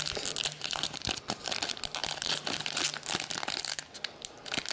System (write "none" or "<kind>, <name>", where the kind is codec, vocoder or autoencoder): none